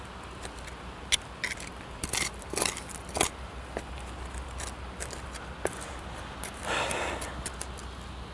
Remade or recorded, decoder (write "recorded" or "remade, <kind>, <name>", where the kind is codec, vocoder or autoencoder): recorded